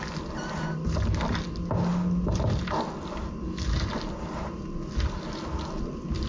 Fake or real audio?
real